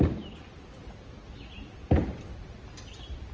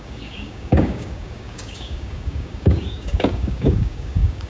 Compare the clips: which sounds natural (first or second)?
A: first